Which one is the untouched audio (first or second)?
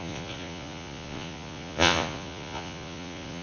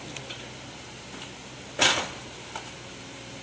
second